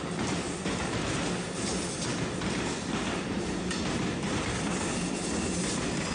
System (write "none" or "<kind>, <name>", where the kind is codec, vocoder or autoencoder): none